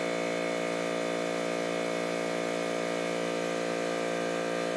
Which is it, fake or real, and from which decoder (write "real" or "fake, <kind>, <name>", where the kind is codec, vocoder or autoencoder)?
real